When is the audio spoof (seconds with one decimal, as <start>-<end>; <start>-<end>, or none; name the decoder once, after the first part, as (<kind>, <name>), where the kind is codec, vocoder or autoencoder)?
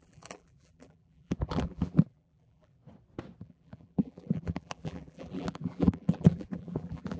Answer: 0.0-2.8 (vocoder, BigVGAN v2); 3.4-7.2